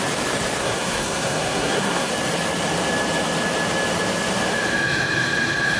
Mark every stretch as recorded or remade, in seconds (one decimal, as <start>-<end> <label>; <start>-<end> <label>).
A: 0.0-0.6 recorded; 0.6-2.1 remade; 2.1-5.8 recorded